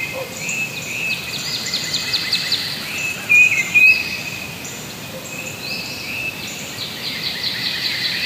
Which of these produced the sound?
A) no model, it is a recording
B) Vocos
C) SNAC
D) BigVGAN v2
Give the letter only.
D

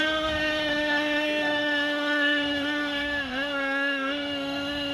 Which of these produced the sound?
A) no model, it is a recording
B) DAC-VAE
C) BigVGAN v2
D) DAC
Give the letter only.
B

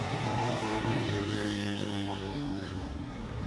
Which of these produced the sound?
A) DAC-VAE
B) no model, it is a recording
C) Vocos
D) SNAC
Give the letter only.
D